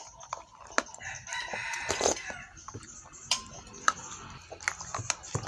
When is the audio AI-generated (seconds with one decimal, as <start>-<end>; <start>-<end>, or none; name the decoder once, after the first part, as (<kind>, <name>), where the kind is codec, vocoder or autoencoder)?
1.6-4.0 (vocoder, BigVGAN v2)